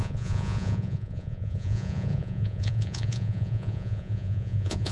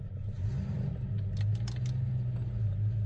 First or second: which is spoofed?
first